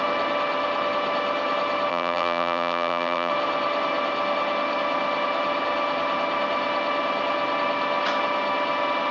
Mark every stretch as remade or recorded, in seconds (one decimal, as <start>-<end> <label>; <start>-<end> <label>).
0.0-1.9 recorded; 1.9-3.3 remade; 3.3-9.1 recorded